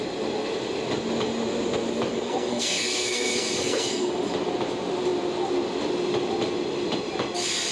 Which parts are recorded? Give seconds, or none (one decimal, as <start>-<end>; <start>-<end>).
0.0-2.1; 4.1-7.7